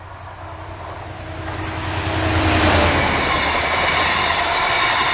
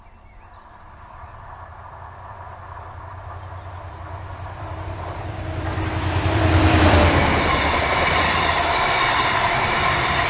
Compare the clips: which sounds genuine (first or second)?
first